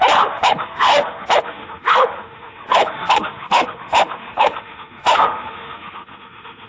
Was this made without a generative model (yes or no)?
no